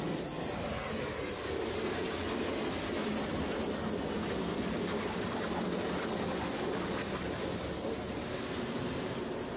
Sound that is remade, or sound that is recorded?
recorded